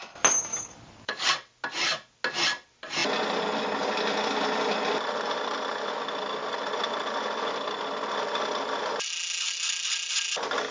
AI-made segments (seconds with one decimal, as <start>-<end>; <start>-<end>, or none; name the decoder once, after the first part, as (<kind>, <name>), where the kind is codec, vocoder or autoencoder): 0.5-1.3 (codec, DAC)